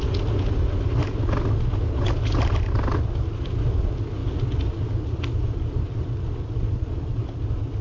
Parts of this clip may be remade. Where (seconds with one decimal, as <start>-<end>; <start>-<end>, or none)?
4.2-7.8